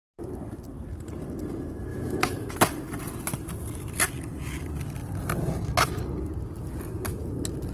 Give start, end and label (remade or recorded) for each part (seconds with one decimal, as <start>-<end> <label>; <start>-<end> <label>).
0.0-1.9 recorded; 1.9-2.5 remade; 2.5-7.7 recorded